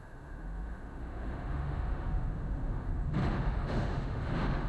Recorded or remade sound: remade